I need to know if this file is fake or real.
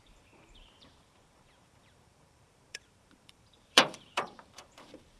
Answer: fake